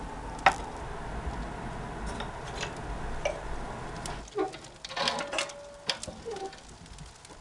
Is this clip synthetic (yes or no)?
no